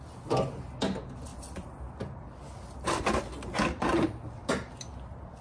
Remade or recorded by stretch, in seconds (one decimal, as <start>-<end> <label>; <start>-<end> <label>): 0.0-5.4 recorded